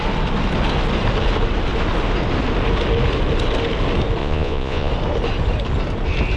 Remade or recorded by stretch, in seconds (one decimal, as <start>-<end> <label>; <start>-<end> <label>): 0.0-4.2 recorded; 4.2-4.9 remade; 4.9-6.4 recorded